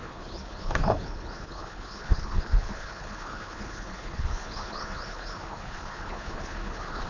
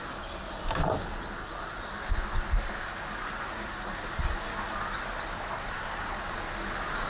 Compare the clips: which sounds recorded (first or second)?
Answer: second